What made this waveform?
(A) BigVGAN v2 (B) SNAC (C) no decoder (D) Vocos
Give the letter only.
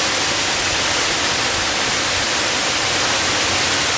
C